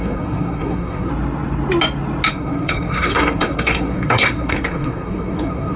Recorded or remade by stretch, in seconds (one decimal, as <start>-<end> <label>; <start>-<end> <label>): 0.0-1.1 remade; 1.1-2.3 recorded; 2.3-5.8 remade